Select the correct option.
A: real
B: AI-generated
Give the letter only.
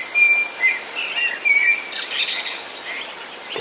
A